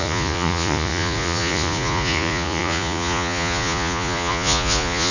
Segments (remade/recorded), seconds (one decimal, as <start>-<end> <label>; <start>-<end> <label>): 0.0-5.1 remade